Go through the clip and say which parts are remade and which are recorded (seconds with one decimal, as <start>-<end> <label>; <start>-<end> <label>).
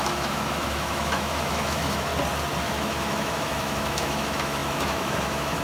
0.0-2.1 remade; 2.1-2.6 recorded; 2.6-5.6 remade